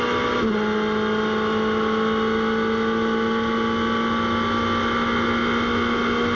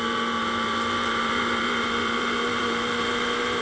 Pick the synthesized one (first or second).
second